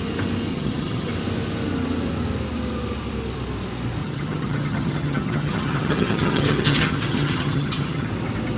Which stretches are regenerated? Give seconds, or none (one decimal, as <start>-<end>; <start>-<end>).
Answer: 0.5-1.1; 4.0-8.1